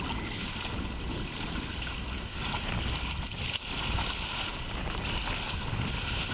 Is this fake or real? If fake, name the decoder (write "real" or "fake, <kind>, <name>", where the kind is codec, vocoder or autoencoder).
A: real